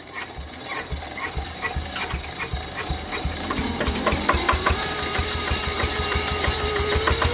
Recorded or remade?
remade